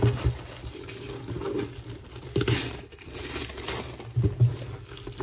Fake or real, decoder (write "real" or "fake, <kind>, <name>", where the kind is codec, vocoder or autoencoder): real